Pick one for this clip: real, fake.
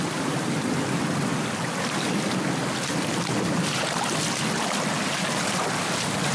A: real